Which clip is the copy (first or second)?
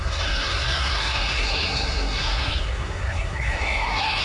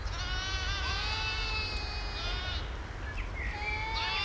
first